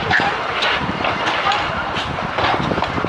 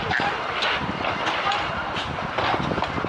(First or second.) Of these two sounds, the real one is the second